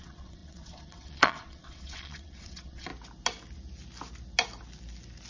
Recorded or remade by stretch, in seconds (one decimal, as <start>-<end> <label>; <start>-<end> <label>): 0.0-2.9 remade; 2.9-5.3 recorded